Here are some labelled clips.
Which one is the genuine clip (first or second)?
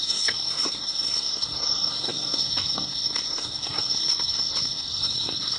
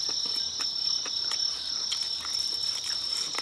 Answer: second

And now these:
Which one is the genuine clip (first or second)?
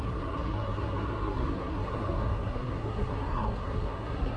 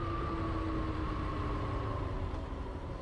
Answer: second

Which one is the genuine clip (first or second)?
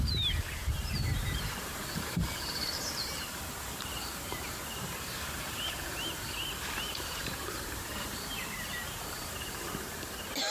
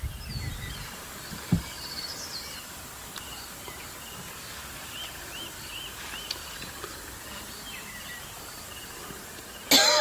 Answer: second